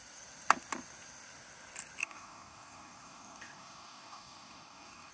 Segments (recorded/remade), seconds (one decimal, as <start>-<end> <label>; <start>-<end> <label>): 0.0-2.0 recorded; 2.0-5.1 remade

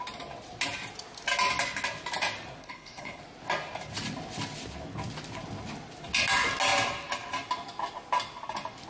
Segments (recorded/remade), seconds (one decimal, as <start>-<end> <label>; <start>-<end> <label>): 0.0-2.6 recorded; 2.6-3.2 remade; 3.2-8.9 recorded

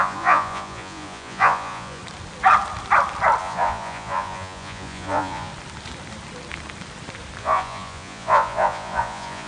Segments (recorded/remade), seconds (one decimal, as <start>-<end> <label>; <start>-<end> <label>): 0.0-2.0 remade; 2.0-3.4 recorded; 3.4-5.5 remade; 5.5-7.4 recorded; 7.4-9.5 remade

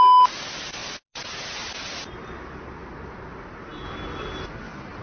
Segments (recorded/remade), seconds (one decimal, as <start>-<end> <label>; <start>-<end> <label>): 0.0-5.0 recorded

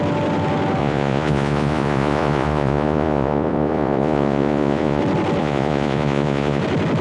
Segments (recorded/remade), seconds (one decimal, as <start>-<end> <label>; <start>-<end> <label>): 0.0-0.8 recorded; 0.8-5.0 remade; 5.0-5.4 recorded; 5.4-6.6 remade; 6.6-7.0 recorded